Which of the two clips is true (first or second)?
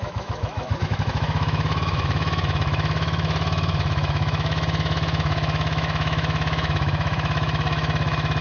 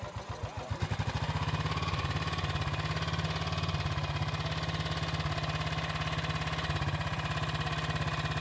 second